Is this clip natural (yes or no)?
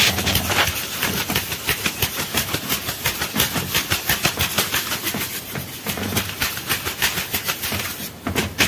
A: yes